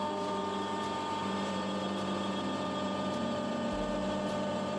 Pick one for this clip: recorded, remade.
remade